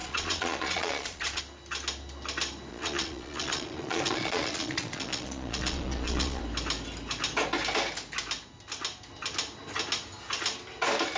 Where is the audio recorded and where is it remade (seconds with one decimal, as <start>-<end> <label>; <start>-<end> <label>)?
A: 0.0-1.4 remade; 1.4-2.7 recorded; 2.7-6.4 remade; 6.4-11.2 recorded